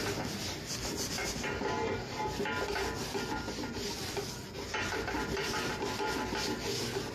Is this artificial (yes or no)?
no